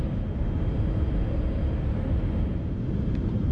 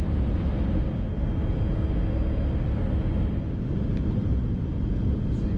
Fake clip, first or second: first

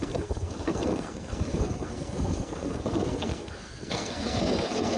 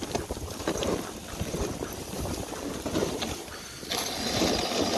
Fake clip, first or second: first